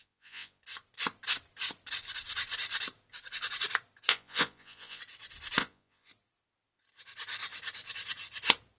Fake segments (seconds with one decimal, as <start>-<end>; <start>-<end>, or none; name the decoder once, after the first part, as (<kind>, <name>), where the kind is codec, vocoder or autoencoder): 0.0-0.6 (vocoder, Vocos); 4.1-5.0; 5.6-6.1